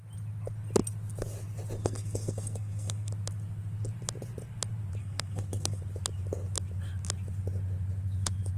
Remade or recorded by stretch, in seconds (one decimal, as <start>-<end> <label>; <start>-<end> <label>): 0.0-1.8 recorded; 1.8-3.1 remade; 3.1-5.0 recorded; 5.0-5.8 remade; 5.8-8.6 recorded